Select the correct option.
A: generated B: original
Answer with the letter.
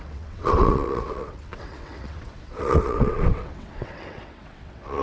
A